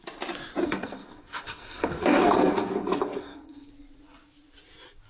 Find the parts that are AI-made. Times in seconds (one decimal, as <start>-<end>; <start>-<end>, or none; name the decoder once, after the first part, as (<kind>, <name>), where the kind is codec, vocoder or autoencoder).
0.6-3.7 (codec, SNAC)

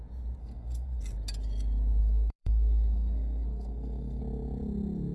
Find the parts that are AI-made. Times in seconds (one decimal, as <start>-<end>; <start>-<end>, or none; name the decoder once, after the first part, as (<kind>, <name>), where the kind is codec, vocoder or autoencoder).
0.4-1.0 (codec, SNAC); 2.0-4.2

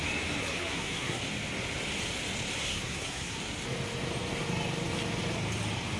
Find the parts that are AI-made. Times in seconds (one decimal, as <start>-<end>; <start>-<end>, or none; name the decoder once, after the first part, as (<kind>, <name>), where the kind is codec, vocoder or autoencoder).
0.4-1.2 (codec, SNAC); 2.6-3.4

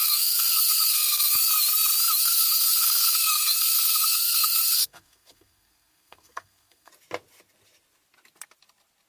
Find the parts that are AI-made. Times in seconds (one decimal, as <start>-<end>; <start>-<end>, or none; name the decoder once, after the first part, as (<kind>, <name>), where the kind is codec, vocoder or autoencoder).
0.0-1.5 (codec, SNAC); 2.2-6.9